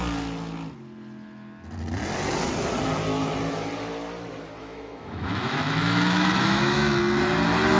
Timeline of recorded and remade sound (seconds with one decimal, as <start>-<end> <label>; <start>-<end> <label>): 0.0-4.6 recorded; 4.6-6.7 remade; 6.7-7.8 recorded